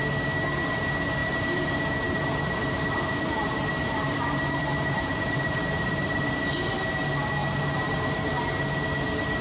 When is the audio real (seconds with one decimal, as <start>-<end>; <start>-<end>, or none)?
0.0-1.2; 6.4-7.4; 8.3-9.4